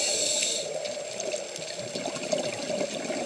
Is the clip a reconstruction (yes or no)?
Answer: no